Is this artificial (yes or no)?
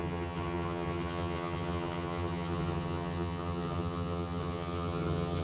yes